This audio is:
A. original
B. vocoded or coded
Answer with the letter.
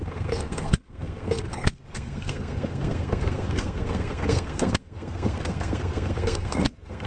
B